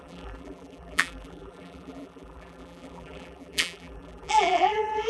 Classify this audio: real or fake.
fake